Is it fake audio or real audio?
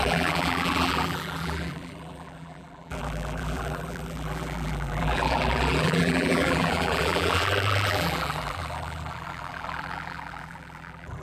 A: fake